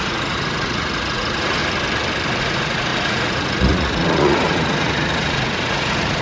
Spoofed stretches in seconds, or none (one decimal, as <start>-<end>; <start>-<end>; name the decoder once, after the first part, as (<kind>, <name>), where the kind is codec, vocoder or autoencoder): 0.0-1.6 (vocoder, Vocos); 2.4-6.2